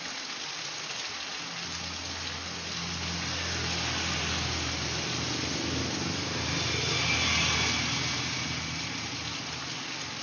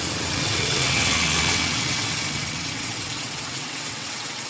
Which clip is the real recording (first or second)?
first